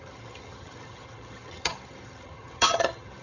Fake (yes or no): yes